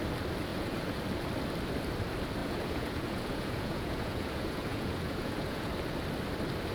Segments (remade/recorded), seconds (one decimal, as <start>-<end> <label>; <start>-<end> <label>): 0.0-0.5 recorded; 0.5-1.0 remade; 1.0-2.4 recorded; 2.4-5.7 remade; 5.7-6.7 recorded

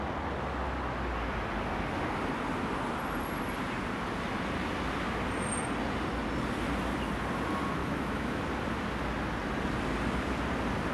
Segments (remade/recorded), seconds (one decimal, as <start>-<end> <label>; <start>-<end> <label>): 0.0-7.8 recorded; 7.8-8.4 remade; 8.4-10.9 recorded